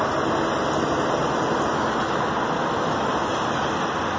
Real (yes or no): yes